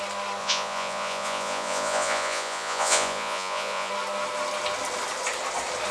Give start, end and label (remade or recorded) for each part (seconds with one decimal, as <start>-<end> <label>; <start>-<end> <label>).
0.0-0.4 recorded; 0.4-3.9 remade; 3.9-5.9 recorded